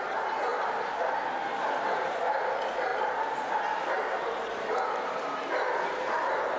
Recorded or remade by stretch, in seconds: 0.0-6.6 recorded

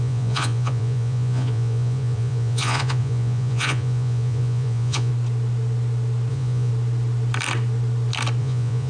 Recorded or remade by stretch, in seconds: 0.0-5.1 remade; 5.1-6.3 recorded; 6.3-6.7 remade; 6.7-8.4 recorded; 8.4-8.9 remade

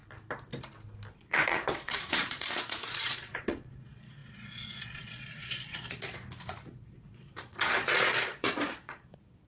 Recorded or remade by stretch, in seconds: 0.0-1.1 recorded; 1.1-9.5 remade

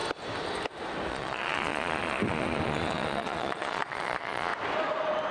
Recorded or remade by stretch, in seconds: 0.0-1.1 recorded; 1.1-4.5 remade; 4.5-5.3 recorded